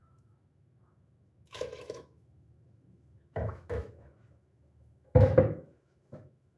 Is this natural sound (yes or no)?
no